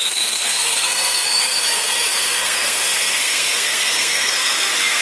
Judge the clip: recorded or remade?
remade